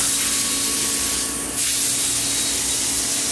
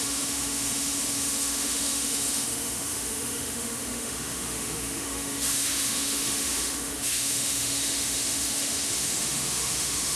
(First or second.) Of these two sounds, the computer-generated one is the second